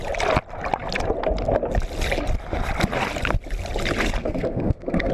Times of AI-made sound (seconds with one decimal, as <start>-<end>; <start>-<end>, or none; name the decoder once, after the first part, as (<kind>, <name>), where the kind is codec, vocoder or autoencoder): 4.2-5.1 (codec, SNAC)